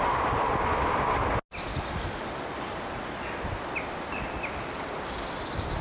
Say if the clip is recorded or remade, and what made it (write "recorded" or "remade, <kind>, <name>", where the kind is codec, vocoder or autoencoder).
recorded